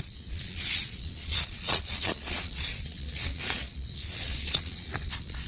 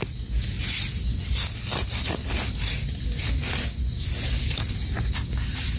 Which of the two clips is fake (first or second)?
first